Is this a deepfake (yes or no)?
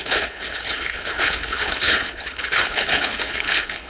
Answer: yes